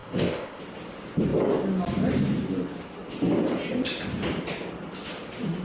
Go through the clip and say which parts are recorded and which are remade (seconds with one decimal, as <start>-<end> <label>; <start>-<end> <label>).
0.0-0.6 remade; 0.6-5.6 recorded